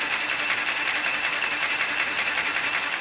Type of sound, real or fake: real